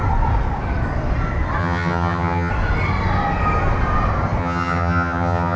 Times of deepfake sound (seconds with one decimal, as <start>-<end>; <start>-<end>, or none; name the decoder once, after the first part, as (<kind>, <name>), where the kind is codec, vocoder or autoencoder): 1.6-2.5 (vocoder, HiFi-GAN); 4.4-5.6